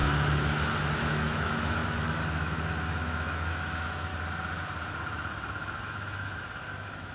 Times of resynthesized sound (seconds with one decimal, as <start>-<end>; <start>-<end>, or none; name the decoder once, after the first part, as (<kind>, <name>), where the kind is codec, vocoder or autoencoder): 0.0-4.1 (autoencoder, DAC-VAE); 5.8-7.1